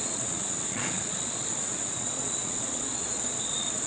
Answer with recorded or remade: remade